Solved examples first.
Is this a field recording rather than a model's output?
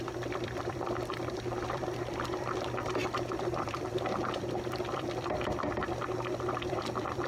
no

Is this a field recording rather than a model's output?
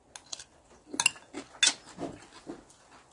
yes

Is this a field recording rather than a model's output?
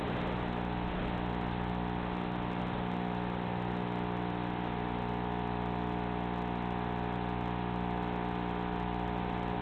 yes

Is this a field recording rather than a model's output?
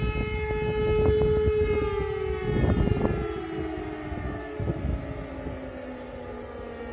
yes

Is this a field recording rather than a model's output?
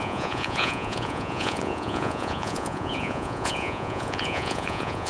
no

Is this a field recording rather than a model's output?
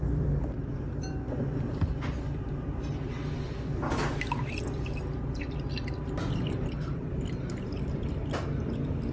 no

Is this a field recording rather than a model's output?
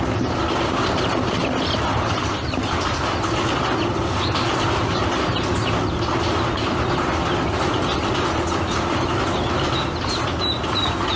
yes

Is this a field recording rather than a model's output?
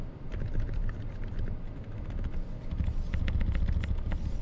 yes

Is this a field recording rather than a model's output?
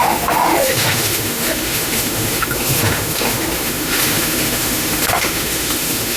no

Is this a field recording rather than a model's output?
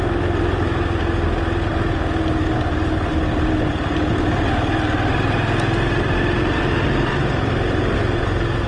yes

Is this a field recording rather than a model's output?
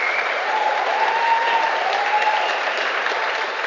no